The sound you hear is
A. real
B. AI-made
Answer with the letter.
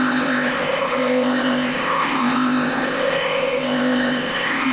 B